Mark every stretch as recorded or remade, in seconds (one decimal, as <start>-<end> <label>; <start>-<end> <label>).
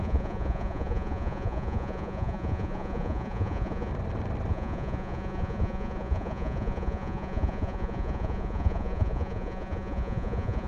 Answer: 0.0-3.9 remade; 3.9-4.5 recorded; 4.5-10.7 remade